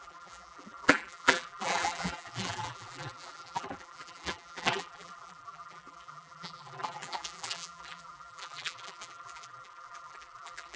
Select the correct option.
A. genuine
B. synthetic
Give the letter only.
B